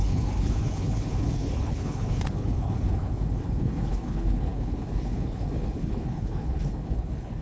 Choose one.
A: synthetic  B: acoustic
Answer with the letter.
A